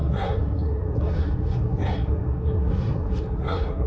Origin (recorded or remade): remade